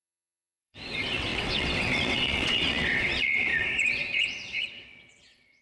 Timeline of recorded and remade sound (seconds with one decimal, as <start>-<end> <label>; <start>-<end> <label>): 0.0-5.6 remade